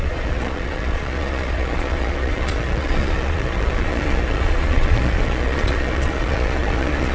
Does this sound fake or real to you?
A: fake